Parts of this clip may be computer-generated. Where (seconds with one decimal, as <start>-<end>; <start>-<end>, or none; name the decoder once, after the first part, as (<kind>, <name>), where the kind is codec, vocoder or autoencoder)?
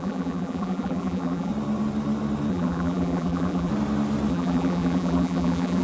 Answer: 0.0-1.5 (vocoder, BigVGAN v2); 2.5-3.7; 4.3-5.8